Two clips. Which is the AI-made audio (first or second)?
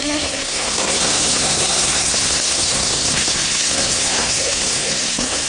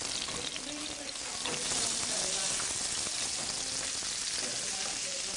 first